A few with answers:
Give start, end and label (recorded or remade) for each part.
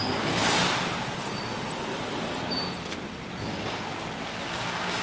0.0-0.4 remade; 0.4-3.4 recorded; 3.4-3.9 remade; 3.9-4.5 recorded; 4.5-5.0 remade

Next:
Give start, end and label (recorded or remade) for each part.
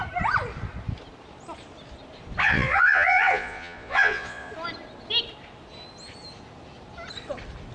0.0-2.4 recorded; 2.4-4.5 remade; 4.5-7.7 recorded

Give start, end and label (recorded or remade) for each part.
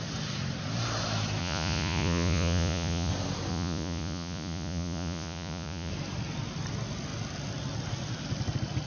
0.0-1.4 recorded; 1.4-3.1 remade; 3.1-3.5 recorded; 3.5-5.9 remade; 5.9-8.9 recorded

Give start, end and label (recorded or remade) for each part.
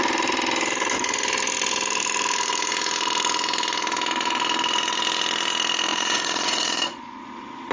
0.0-5.9 recorded; 5.9-7.1 remade; 7.1-7.7 recorded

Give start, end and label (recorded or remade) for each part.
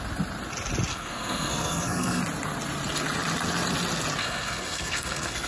0.0-0.9 recorded; 0.9-2.2 remade; 2.2-4.2 recorded; 4.2-5.5 remade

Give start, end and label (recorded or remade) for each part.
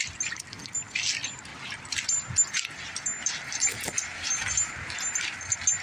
0.0-5.8 recorded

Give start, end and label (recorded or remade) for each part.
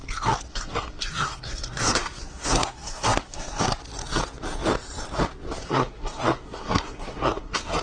0.0-0.5 recorded; 0.5-3.6 remade; 3.6-5.6 recorded; 5.6-7.8 remade